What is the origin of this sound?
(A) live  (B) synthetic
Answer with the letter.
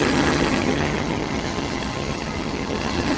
B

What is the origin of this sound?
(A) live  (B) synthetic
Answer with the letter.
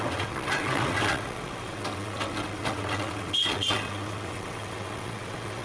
B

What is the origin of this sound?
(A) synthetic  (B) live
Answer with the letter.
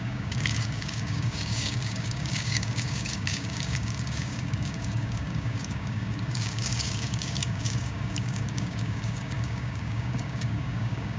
A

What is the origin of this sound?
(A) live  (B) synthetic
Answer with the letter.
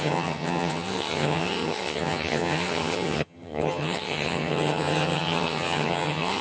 B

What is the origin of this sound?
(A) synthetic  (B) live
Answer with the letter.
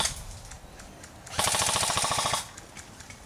B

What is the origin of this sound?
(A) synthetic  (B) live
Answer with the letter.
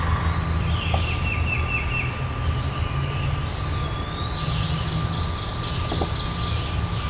B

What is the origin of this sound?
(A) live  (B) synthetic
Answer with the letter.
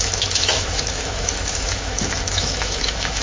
B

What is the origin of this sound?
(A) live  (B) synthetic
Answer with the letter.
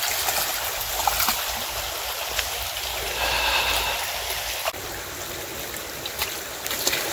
A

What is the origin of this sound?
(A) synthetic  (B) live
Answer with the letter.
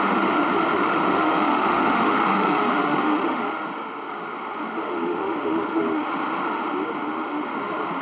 A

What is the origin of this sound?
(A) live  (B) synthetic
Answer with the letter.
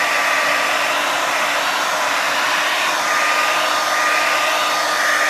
A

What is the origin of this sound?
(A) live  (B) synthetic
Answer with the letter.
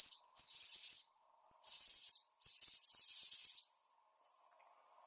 A